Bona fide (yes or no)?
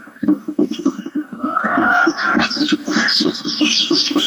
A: no